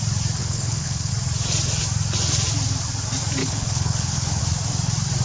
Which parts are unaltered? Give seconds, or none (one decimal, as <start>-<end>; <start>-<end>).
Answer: 0.0-0.4; 1.1-3.4; 4.4-5.2